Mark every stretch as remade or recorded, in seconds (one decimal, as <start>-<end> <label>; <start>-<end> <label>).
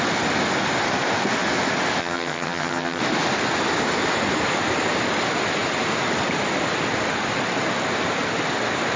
0.0-2.0 recorded; 2.0-3.0 remade; 3.0-9.0 recorded